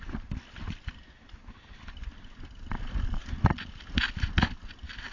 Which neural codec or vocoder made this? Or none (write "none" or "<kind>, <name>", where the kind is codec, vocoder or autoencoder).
none